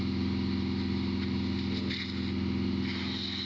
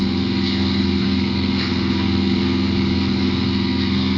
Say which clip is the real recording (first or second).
first